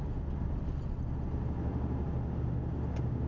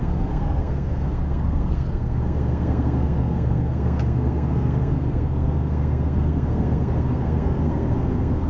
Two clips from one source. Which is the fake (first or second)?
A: second